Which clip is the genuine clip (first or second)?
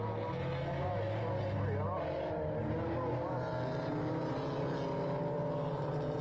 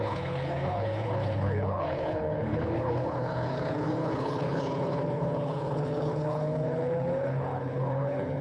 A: first